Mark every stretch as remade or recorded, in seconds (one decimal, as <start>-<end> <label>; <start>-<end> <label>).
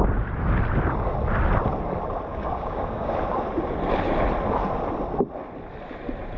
0.0-2.3 recorded; 2.3-3.1 remade; 3.1-6.4 recorded